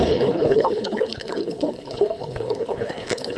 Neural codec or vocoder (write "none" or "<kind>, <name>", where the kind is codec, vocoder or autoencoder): codec, HILCodec